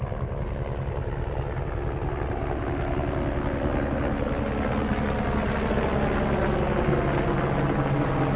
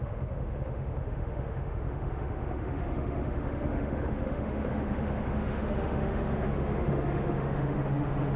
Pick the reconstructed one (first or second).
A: second